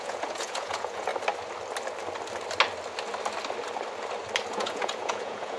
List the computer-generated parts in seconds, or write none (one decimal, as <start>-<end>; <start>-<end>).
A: 0.0-1.1; 4.5-5.6